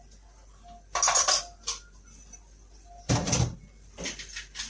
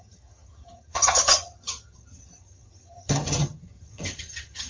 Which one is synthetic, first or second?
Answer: second